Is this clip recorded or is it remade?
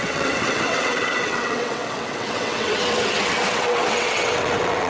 remade